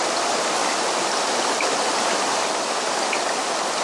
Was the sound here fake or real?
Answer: real